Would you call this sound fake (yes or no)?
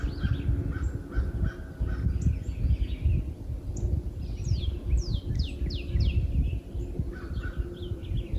no